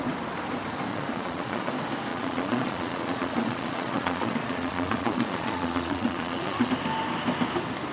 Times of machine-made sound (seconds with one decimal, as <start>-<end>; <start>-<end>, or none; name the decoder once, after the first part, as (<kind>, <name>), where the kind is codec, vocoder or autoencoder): 0.9-1.7 (vocoder, Vocos); 2.1-6.7